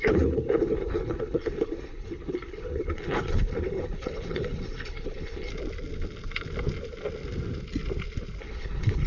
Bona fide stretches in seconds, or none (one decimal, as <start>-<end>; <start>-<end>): 5.5-8.4

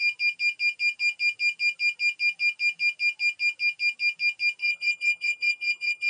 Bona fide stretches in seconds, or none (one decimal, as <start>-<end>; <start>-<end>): 0.0-4.6

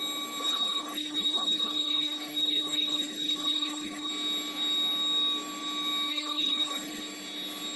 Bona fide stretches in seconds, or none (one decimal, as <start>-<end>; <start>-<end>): 0.0-0.4; 4.1-6.1; 7.0-7.8

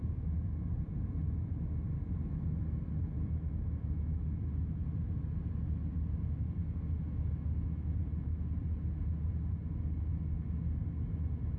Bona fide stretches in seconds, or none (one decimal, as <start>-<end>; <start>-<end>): 0.0-11.6